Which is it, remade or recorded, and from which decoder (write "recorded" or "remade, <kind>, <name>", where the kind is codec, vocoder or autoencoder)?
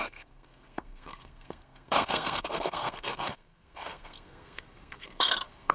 remade, codec, SNAC